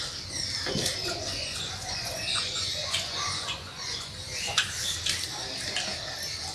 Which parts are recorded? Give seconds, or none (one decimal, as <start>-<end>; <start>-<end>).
0.0-1.0; 4.7-6.5